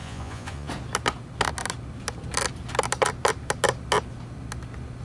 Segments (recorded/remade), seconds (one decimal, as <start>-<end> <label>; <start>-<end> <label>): 0.0-0.7 remade; 0.7-5.0 recorded